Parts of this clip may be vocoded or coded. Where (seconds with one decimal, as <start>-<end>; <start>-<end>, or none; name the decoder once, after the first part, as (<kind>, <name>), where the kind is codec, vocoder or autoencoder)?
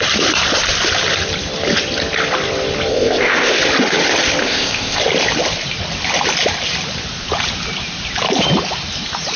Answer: 2.9-3.6 (codec, ZipCodec); 4.4-5.0